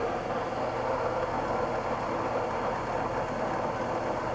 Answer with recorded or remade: recorded